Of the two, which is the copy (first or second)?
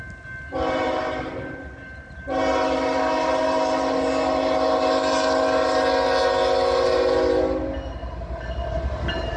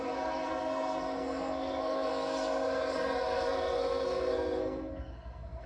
second